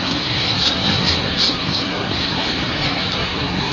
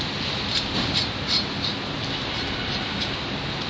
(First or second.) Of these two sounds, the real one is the second